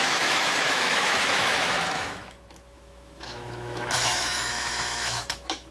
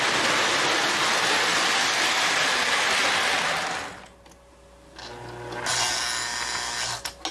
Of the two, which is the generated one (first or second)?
first